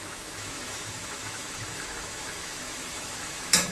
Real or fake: fake